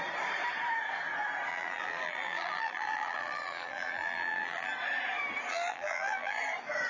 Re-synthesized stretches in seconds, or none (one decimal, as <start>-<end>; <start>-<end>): 1.5-4.7; 5.5-6.4